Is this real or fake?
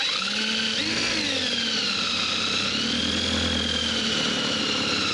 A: real